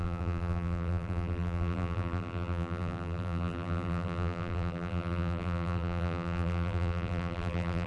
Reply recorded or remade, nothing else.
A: remade